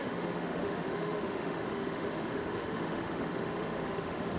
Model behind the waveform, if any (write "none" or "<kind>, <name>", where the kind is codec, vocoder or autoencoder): autoencoder, DAC-VAE